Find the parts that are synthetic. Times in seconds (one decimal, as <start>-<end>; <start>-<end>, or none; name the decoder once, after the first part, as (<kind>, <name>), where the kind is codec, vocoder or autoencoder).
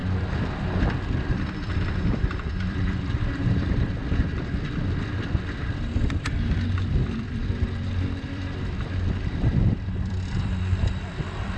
0.0-11.6 (vocoder, BigVGAN v2)